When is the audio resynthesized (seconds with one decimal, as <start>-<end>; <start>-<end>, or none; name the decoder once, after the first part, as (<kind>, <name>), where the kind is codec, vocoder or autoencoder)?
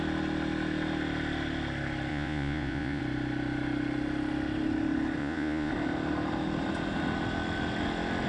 2.1-3.0 (vocoder, Vocos); 5.2-5.7